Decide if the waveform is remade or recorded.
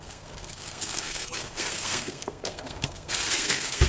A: remade